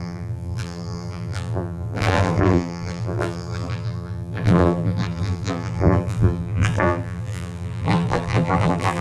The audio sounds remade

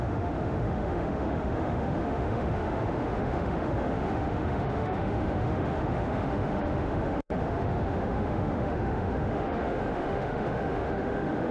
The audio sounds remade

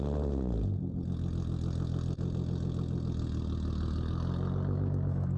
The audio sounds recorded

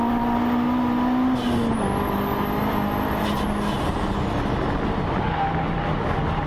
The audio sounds recorded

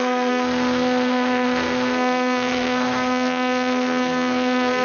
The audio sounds remade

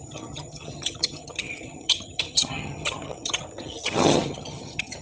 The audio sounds remade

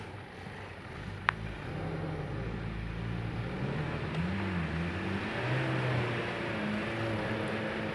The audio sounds recorded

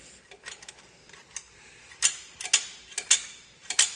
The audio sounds recorded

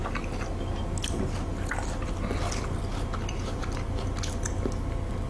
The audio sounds recorded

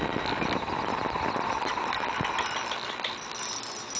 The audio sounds recorded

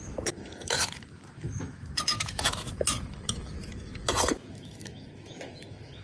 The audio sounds remade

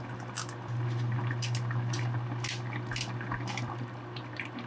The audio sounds recorded